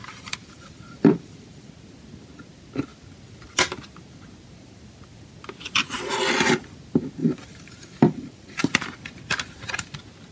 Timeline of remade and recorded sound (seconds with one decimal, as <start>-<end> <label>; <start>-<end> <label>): 0.0-1.7 remade; 1.7-7.2 recorded; 7.2-8.8 remade; 8.8-10.3 recorded